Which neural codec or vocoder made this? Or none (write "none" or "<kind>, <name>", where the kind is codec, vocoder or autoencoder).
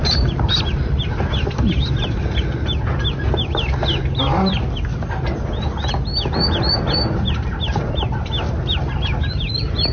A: none